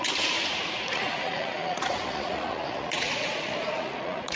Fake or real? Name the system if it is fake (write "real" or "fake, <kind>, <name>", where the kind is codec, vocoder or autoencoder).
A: fake, vocoder, Vocos